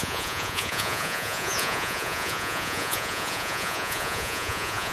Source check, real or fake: fake